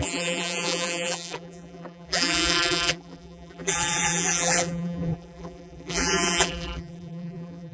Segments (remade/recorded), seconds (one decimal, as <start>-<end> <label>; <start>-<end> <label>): 0.0-7.7 remade